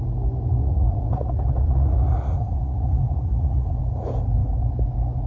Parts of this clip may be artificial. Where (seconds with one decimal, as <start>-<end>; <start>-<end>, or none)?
0.6-3.8